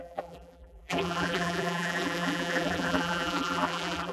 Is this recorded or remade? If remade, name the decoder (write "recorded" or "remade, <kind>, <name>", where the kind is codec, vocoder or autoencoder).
remade, vocoder, BigVGAN v2